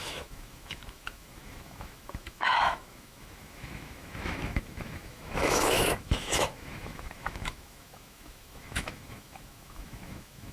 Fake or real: fake